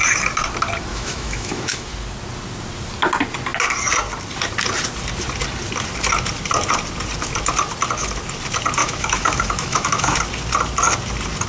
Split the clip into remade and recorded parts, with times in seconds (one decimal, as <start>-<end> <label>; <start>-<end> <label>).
0.0-0.9 recorded; 0.9-1.9 remade; 1.9-8.8 recorded; 8.8-10.2 remade; 10.2-11.5 recorded